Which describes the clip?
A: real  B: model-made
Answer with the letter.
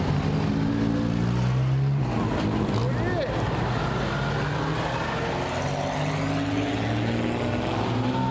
A